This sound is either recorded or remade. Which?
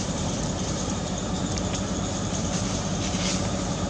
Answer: remade